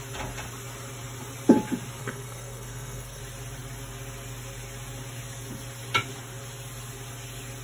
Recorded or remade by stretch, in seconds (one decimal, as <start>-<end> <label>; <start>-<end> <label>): 0.0-2.0 recorded; 2.0-3.2 remade; 3.2-7.6 recorded